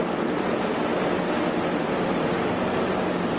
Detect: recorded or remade recorded